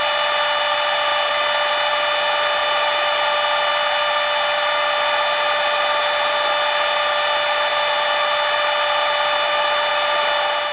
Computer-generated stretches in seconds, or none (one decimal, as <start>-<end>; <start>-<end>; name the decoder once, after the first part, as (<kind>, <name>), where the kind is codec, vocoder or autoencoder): none